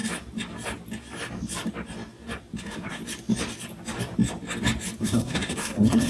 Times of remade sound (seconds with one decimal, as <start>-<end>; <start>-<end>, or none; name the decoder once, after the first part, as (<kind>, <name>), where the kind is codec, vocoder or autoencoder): 2.6-3.0 (codec, SNAC); 5.0-6.1